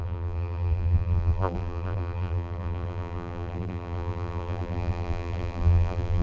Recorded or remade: remade